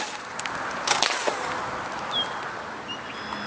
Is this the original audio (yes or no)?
yes